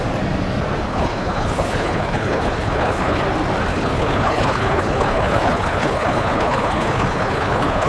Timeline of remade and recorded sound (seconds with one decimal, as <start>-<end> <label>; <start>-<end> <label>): 0.0-0.9 recorded; 0.9-3.2 remade; 3.2-3.7 recorded; 3.7-7.9 remade

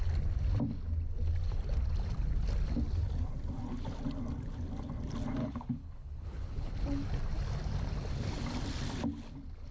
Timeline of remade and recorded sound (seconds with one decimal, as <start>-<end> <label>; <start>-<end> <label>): 0.0-5.4 recorded; 5.4-6.7 remade; 6.7-9.7 recorded

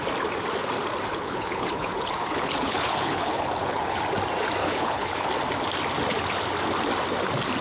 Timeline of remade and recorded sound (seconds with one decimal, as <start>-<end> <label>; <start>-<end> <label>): 0.0-1.1 recorded; 1.1-4.0 remade; 4.0-4.6 recorded; 4.6-5.3 remade; 5.3-7.6 recorded

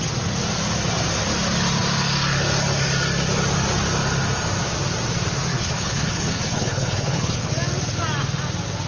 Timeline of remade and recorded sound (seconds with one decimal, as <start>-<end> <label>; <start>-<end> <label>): 0.0-5.5 recorded; 5.5-7.5 remade; 7.5-8.9 recorded

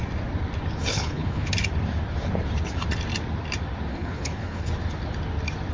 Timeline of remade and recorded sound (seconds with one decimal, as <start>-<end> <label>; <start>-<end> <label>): 0.0-0.9 recorded; 0.9-1.5 remade; 1.5-3.9 recorded; 3.9-4.7 remade; 4.7-5.7 recorded